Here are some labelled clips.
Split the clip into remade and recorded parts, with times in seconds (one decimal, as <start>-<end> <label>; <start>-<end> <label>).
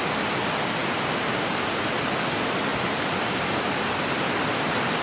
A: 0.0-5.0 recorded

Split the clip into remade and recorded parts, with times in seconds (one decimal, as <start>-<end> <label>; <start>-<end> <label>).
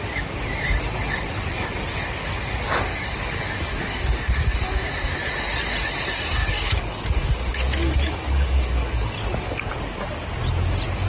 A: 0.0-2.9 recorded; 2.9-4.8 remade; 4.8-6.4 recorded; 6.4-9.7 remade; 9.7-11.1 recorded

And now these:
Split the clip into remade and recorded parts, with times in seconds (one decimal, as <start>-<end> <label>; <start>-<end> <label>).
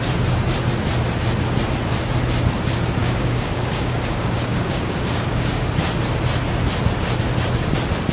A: 0.0-3.0 recorded; 3.0-5.7 remade; 5.7-8.1 recorded